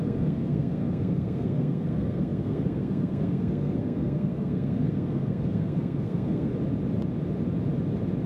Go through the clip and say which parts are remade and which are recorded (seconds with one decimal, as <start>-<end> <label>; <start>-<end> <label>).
0.0-6.5 remade; 6.5-8.3 recorded